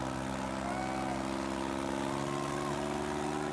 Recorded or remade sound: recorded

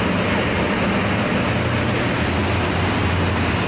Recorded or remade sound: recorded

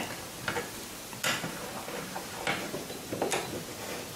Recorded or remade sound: recorded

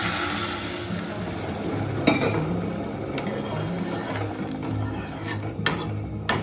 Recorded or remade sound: recorded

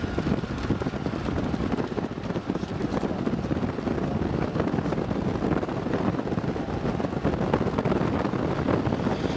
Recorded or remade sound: recorded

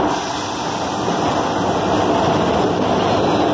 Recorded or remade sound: recorded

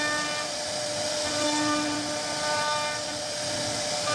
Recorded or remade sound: recorded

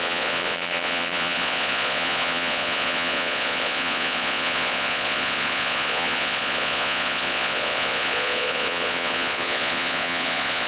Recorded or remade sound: remade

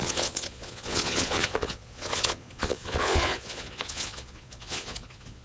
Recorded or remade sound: remade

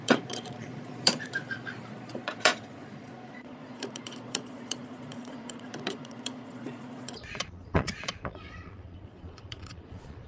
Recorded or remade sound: remade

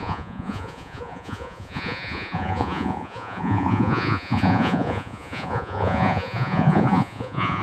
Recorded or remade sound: remade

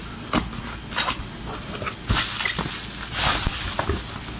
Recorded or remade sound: recorded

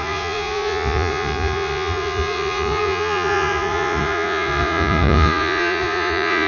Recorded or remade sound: remade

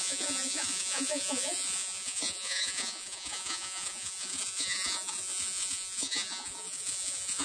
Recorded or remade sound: remade